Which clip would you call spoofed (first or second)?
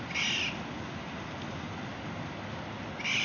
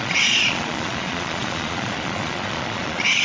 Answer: second